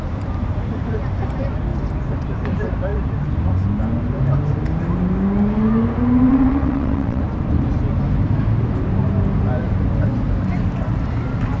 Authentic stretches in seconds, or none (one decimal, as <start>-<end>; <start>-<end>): 0.0-6.3; 7.2-11.6